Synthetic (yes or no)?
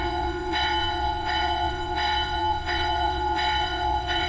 yes